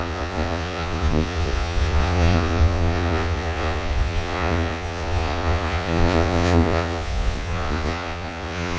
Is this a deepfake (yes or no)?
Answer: yes